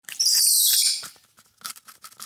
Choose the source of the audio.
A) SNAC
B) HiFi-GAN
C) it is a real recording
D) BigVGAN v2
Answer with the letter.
C